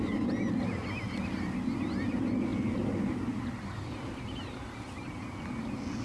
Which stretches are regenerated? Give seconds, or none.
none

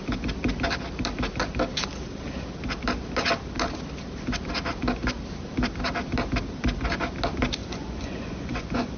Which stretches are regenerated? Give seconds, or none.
7.6-9.0